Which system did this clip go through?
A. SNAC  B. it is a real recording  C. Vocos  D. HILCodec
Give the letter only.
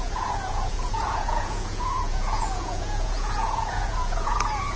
C